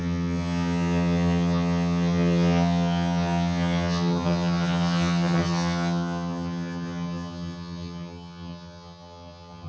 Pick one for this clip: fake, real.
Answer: fake